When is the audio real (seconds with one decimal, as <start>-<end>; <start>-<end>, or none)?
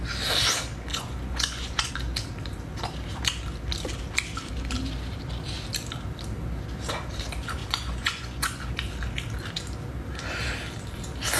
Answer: 0.0-0.9; 1.9-7.6; 8.6-11.4